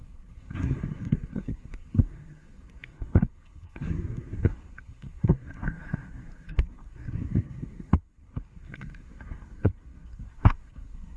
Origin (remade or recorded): remade